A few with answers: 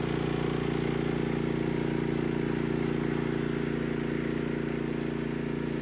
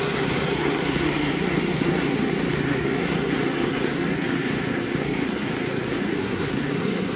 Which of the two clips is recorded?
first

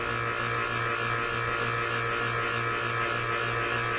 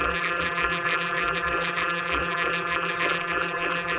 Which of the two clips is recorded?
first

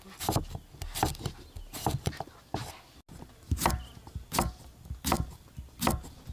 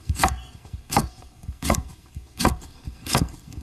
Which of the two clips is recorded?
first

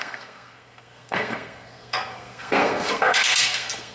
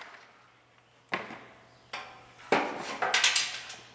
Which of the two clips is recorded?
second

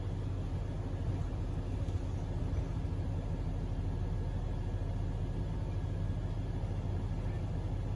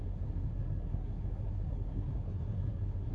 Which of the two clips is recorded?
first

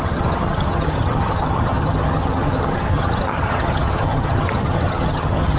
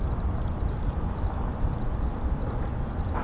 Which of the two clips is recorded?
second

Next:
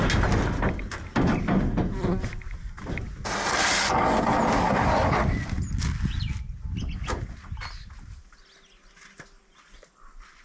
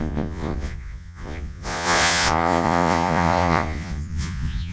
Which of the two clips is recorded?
first